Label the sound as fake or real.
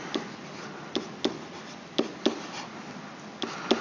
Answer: real